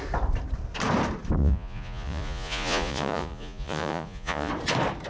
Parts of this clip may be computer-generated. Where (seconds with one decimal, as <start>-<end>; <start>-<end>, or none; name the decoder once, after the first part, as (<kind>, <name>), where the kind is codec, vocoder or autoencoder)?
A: 1.4-4.5 (vocoder, Vocos)